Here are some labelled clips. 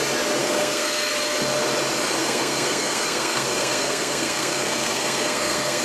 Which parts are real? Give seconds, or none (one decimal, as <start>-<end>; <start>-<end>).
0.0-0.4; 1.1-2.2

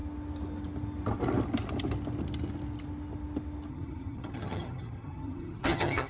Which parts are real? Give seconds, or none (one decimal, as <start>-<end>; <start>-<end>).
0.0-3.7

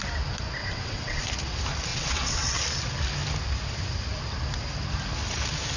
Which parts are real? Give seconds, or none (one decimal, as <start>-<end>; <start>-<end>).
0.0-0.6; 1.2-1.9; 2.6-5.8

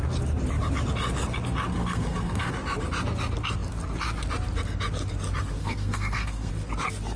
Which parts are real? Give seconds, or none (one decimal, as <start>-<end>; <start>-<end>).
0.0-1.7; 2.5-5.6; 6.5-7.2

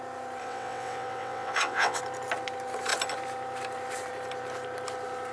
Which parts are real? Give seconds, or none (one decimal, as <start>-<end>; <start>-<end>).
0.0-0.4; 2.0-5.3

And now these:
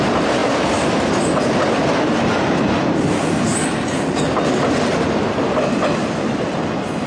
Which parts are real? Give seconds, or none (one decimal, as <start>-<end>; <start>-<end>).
0.0-7.1